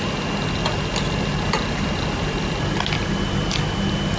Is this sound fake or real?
real